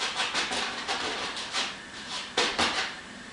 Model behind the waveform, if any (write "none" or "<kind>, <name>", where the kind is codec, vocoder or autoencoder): vocoder, BigVGAN v2